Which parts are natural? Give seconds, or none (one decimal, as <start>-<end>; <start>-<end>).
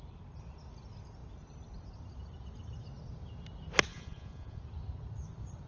0.0-3.9; 4.6-5.7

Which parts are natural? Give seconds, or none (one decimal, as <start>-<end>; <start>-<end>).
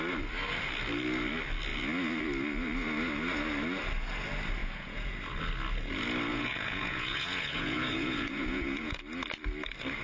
0.0-4.6; 5.1-6.3; 9.0-10.0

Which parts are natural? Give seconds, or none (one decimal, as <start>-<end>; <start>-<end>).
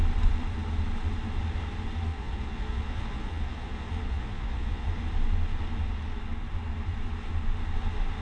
0.0-2.1; 4.9-8.2